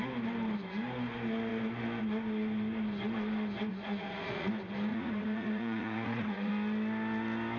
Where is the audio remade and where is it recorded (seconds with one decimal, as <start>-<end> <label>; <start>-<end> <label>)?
0.0-3.7 recorded; 3.7-4.5 remade; 4.5-4.9 recorded; 4.9-6.5 remade; 6.5-7.6 recorded